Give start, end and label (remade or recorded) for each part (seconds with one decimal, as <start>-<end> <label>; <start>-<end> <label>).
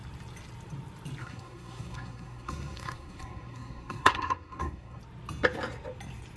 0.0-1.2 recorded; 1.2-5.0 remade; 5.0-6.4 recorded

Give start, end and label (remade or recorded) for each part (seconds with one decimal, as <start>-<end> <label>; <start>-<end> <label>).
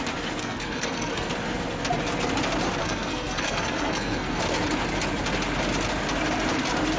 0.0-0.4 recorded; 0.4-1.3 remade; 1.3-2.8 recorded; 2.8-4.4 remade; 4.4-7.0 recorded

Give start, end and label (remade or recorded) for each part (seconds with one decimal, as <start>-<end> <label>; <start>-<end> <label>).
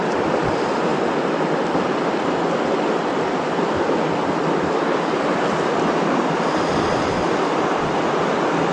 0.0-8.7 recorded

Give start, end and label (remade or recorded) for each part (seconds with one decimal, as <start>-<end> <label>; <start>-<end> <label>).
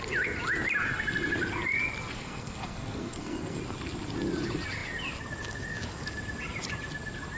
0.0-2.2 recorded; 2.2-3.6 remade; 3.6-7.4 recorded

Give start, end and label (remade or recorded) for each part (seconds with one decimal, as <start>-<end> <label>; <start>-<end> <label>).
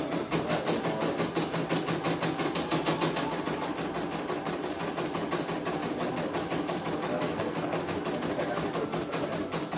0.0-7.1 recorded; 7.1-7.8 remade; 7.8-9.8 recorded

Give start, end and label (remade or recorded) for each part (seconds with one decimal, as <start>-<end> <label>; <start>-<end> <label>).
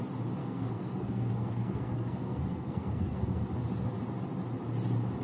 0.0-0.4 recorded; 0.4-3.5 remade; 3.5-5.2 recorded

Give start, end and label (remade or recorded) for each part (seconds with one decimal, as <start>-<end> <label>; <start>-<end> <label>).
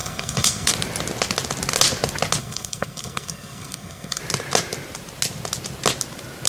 0.0-0.7 remade; 0.7-2.4 recorded; 2.4-4.2 remade; 4.2-6.5 recorded